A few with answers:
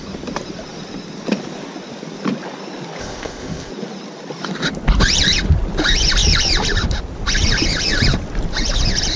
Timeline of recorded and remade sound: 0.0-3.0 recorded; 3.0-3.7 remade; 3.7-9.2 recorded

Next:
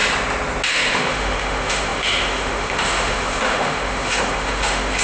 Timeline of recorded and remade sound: 0.0-0.7 recorded; 0.7-5.0 remade